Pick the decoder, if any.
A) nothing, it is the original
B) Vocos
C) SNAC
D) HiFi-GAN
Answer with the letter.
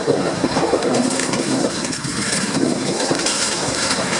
C